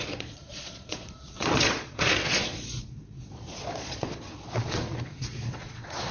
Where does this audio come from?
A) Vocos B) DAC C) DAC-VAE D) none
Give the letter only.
A